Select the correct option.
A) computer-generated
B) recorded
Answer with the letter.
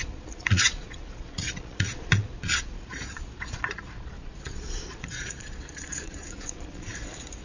A